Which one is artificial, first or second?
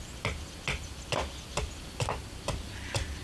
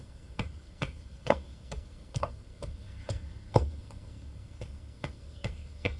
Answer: second